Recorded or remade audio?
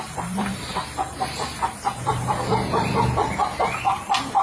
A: remade